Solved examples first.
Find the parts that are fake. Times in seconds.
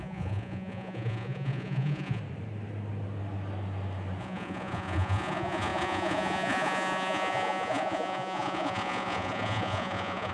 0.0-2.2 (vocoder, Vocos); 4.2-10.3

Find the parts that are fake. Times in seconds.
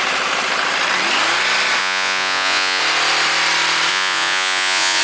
1.8-2.8 (vocoder, Vocos); 3.9-5.0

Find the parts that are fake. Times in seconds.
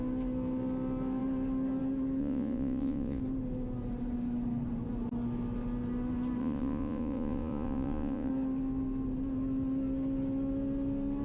2.2-3.2 (vocoder, Vocos); 6.4-8.3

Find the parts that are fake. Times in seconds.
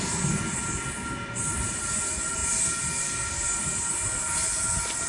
none